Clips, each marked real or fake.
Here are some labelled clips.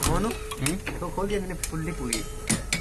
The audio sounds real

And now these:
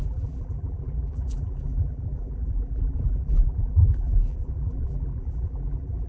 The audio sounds fake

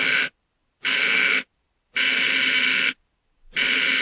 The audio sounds fake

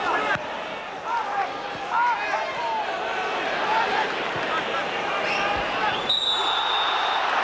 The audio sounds real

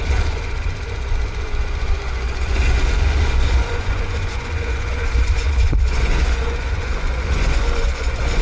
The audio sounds fake